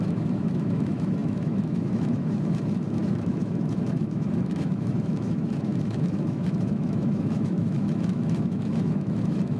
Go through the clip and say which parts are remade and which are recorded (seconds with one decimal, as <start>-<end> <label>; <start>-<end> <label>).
0.0-9.6 remade

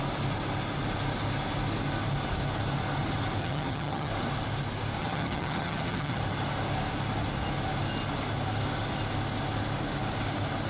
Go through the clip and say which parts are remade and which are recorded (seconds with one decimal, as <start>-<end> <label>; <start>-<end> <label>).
0.0-3.4 recorded; 3.4-4.1 remade; 4.1-5.0 recorded; 5.0-6.2 remade; 6.2-10.7 recorded

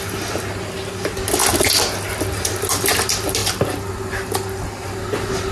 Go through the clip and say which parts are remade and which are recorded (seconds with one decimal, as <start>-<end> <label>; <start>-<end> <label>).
0.0-5.5 recorded

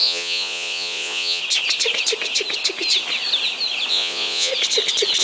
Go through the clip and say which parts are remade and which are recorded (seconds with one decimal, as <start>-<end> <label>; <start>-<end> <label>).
0.0-1.4 remade; 1.4-3.9 recorded; 3.9-4.5 remade; 4.5-5.2 recorded